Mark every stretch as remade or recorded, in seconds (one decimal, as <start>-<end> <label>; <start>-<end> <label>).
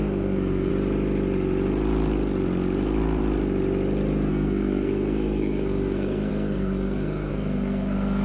0.0-0.7 remade; 0.7-4.3 recorded; 4.3-8.2 remade